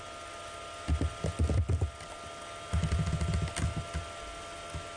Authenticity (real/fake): real